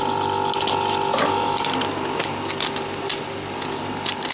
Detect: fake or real real